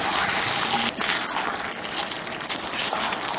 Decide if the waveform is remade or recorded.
recorded